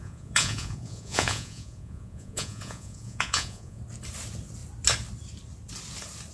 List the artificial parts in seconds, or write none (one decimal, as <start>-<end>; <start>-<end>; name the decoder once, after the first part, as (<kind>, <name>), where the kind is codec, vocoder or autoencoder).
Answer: 0.0-3.8 (vocoder, Vocos)